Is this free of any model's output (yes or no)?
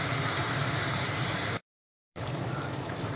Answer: no